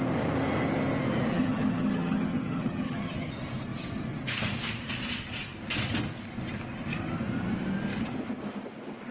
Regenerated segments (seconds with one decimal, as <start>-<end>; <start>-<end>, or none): 1.3-3.3